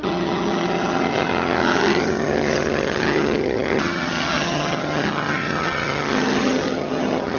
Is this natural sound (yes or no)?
no